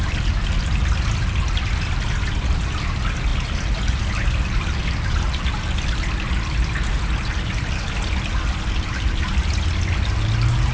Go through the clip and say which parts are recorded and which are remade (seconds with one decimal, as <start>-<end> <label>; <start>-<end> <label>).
0.0-10.7 recorded